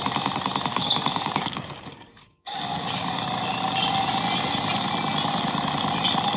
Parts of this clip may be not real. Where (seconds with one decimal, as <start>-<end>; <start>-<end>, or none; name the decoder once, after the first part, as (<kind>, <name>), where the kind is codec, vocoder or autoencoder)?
0.7-3.2 (codec, DAC)